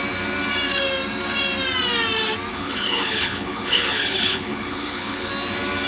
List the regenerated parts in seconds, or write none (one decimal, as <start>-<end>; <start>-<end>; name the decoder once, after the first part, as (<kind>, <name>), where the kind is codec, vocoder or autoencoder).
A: 2.5-5.3 (codec, HILCodec)